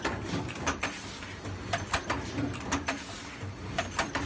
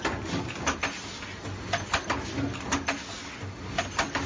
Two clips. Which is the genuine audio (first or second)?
second